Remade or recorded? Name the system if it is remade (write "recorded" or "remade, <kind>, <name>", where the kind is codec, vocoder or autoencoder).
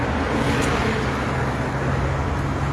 recorded